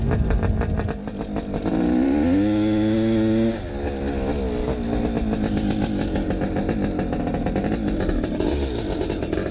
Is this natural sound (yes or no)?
yes